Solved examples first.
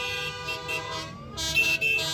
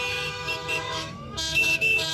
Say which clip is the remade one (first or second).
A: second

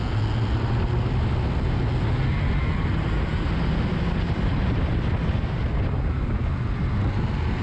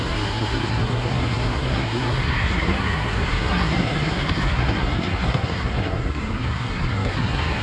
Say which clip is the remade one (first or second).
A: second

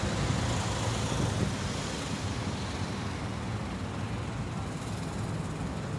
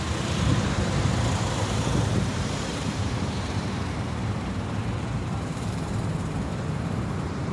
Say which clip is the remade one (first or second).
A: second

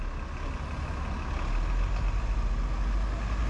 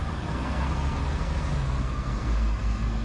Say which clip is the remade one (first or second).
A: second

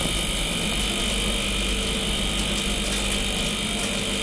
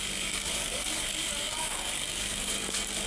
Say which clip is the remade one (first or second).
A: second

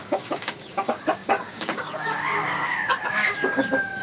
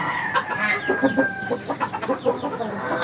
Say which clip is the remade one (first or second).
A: first